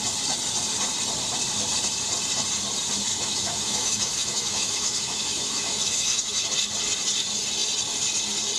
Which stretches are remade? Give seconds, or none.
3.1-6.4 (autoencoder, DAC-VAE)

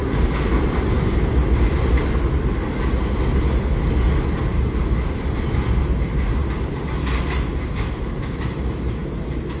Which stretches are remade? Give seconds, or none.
none

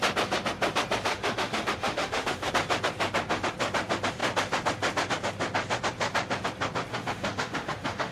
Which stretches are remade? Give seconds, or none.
1.1-2.5 (autoencoder, DAC-VAE); 6.9-8.1

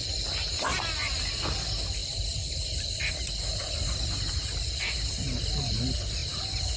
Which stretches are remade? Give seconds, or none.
none

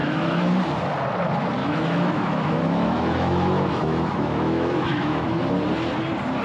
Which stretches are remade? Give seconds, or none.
0.0-0.5 (autoencoder, DAC-VAE); 1.6-5.4

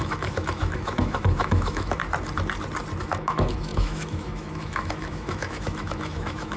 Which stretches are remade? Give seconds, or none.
0.0-2.0 (autoencoder, DAC-VAE); 3.0-6.6

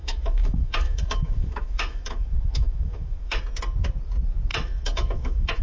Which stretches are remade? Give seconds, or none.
0.0-3.4 (autoencoder, DAC-VAE); 4.5-5.6

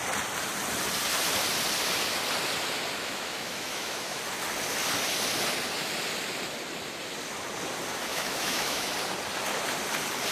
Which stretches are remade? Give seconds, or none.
3.0-4.2 (autoencoder, DAC-VAE); 8.1-8.9